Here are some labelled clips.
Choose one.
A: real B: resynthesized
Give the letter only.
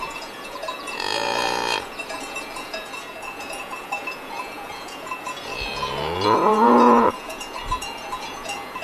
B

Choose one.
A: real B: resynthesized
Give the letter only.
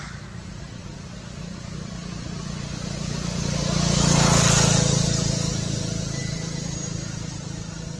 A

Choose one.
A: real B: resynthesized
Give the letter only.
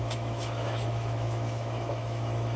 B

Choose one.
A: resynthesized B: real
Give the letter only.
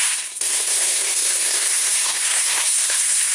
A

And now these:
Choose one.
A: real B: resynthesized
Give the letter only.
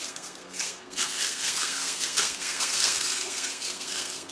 B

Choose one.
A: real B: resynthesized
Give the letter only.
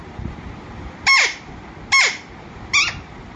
A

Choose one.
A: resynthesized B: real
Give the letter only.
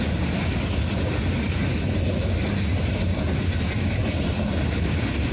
B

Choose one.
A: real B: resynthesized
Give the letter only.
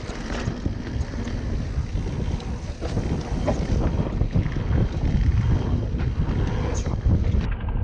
A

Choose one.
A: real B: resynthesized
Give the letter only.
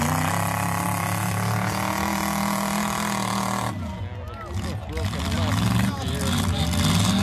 A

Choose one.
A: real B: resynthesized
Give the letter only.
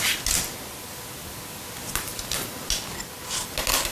A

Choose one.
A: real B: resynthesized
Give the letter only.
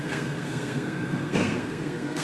B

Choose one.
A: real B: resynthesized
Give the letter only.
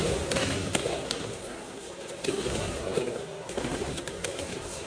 B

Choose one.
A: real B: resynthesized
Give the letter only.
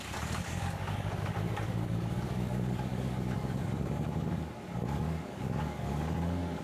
B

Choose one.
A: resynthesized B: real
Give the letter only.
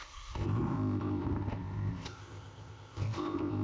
A